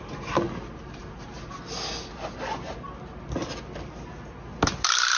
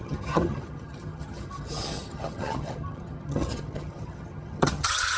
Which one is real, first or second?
first